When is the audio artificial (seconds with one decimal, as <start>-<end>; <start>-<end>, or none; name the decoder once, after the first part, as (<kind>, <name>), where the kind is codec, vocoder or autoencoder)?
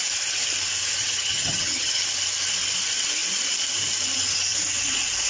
1.0-2.0 (vocoder, HiFi-GAN)